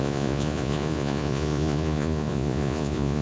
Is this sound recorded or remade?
remade